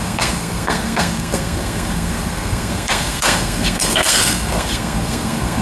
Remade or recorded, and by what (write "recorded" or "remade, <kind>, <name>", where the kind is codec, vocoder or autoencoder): remade, codec, SNAC